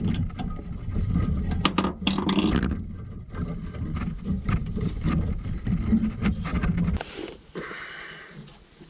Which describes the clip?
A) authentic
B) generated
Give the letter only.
A